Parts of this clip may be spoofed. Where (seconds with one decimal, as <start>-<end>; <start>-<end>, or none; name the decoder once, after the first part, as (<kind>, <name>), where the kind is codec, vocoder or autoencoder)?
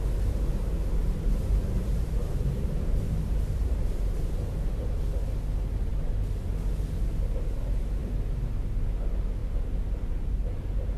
1.0-5.0 (vocoder, BigVGAN v2)